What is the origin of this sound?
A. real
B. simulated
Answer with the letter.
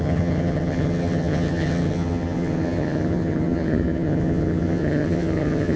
B